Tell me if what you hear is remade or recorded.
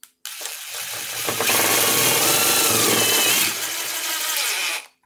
recorded